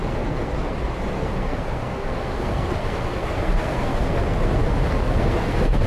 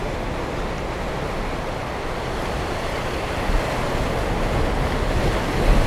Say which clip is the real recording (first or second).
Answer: second